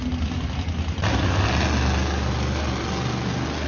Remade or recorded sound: recorded